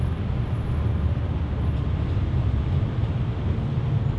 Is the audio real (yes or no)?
yes